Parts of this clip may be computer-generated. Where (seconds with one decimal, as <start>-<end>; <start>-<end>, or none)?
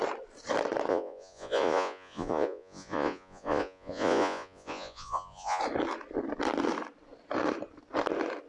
0.9-5.6